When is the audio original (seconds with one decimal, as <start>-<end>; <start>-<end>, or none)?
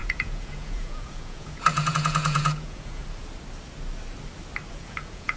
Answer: 3.0-4.7